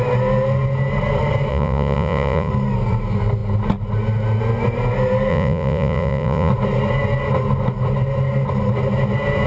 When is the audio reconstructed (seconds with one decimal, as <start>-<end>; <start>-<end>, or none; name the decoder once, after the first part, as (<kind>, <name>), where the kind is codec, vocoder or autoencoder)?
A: 1.5-2.5 (vocoder, Vocos); 5.3-6.5